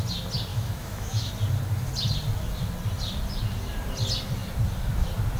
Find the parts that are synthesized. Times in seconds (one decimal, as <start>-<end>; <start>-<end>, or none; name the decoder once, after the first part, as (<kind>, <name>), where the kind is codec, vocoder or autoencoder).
0.5-1.3 (autoencoder, DAC-VAE)